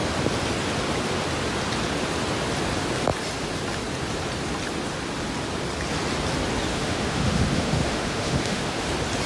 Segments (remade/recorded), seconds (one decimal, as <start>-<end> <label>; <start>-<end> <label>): 0.0-6.7 recorded; 6.7-8.9 remade; 8.9-9.3 recorded